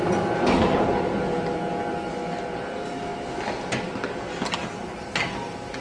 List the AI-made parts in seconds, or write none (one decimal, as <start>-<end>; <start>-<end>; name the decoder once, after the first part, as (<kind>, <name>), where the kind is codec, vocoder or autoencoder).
none